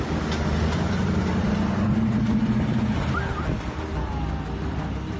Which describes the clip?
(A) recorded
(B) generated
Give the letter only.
A